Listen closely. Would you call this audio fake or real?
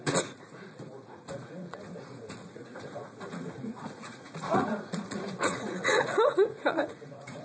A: fake